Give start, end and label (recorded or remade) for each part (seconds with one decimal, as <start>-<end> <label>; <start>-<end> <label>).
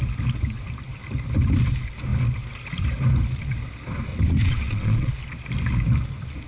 0.0-4.1 recorded; 4.1-5.1 remade; 5.1-6.5 recorded